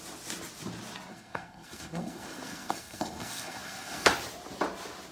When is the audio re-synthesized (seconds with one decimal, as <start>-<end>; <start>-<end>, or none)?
1.1-4.1